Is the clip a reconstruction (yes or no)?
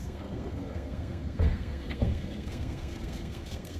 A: yes